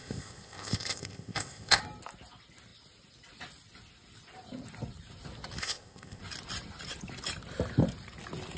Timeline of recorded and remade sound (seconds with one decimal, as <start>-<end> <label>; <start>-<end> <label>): 0.0-1.8 remade; 1.8-5.6 recorded; 5.6-6.2 remade; 6.2-8.6 recorded

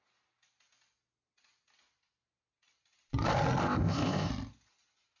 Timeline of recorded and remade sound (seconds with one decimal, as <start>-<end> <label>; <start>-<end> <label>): 0.0-3.6 recorded; 3.6-4.3 remade; 4.3-5.2 recorded

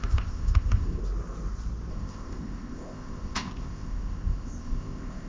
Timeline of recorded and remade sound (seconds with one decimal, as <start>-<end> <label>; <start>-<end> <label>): 0.0-1.0 remade; 1.0-1.9 recorded; 1.9-5.3 remade